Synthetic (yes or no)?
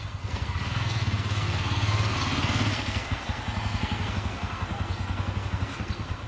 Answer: yes